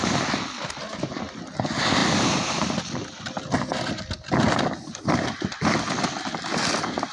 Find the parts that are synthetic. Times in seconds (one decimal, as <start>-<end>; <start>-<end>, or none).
none